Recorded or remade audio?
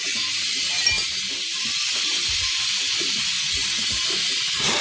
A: recorded